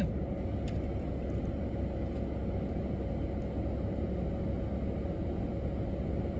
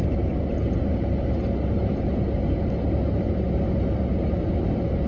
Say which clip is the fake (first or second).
second